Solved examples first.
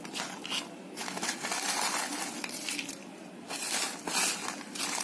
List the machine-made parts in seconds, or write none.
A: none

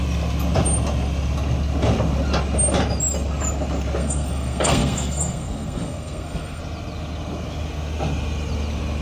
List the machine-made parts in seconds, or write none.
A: 4.0-6.6 (codec, SNAC)

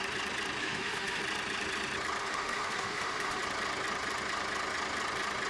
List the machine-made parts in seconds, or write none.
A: 0.6-1.2 (autoencoder, DAC-VAE); 2.2-3.4

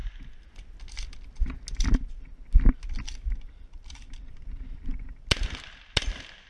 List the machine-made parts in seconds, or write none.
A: none

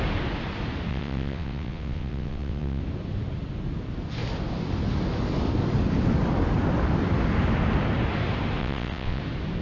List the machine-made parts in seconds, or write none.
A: 0.9-2.8 (vocoder, WaveNeXt); 8.6-9.2